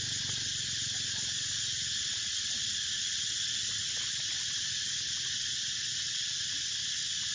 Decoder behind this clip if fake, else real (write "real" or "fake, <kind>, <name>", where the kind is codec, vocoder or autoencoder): real